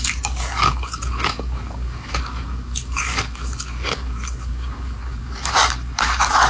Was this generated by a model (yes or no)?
yes